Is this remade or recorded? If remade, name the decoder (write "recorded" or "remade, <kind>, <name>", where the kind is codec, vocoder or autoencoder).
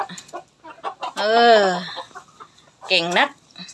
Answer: recorded